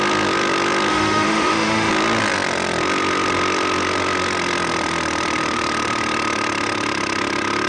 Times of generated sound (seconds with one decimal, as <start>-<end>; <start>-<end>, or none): 0.9-1.9